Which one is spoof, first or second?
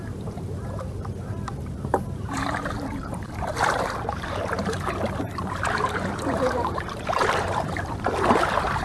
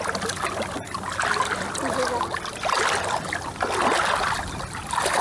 first